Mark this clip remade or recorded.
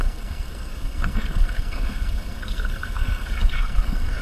remade